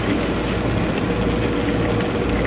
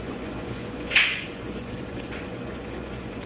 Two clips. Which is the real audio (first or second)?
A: first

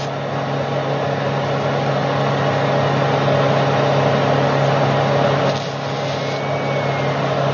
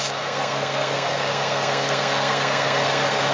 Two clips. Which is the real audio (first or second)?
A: first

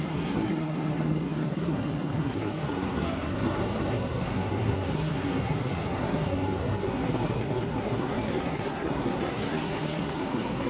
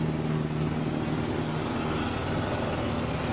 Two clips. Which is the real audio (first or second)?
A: second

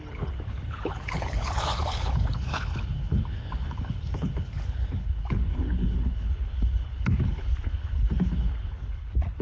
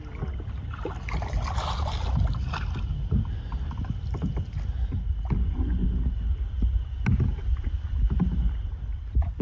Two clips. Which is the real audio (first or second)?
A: second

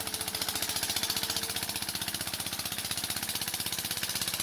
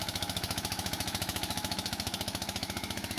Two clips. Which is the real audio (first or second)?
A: first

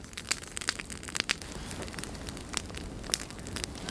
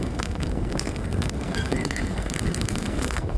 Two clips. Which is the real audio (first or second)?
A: first